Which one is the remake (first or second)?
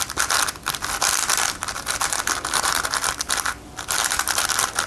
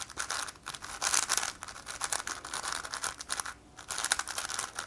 first